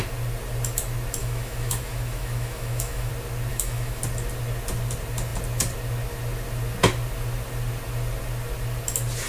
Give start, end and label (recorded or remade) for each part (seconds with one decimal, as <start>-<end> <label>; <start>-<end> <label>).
0.0-1.2 recorded; 1.2-3.1 remade; 3.1-3.5 recorded; 3.5-4.0 remade; 4.0-9.3 recorded

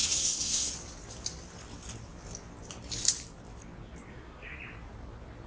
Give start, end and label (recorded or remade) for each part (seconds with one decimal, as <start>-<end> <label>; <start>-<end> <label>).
0.0-0.7 remade; 0.7-4.1 recorded; 4.1-4.6 remade; 4.6-5.5 recorded

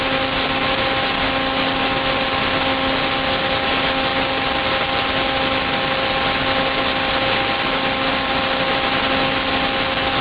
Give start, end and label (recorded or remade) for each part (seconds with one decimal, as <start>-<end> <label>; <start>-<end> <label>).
0.0-10.2 recorded

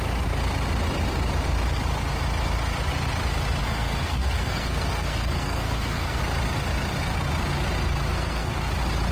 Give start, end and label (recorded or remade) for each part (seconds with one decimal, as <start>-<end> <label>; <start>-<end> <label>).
0.0-3.6 recorded; 3.6-6.2 remade; 6.2-8.1 recorded; 8.1-8.7 remade; 8.7-9.1 recorded

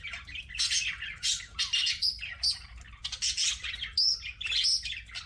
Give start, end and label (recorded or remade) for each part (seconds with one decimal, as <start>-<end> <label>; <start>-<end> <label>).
0.0-5.3 recorded